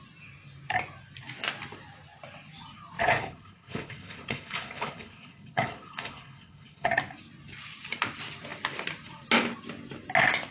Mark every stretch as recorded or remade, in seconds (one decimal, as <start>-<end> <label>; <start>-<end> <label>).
0.0-3.0 recorded; 3.0-6.9 remade; 6.9-10.5 recorded